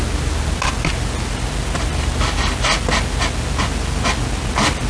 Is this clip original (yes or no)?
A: yes